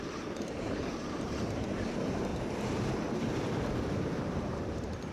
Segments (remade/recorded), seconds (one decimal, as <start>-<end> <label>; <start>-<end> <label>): 0.0-2.3 remade; 2.3-3.9 recorded; 3.9-5.1 remade